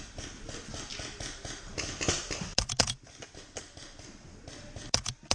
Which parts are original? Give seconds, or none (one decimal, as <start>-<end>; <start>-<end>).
0.0-5.3